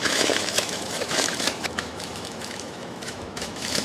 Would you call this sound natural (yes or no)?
no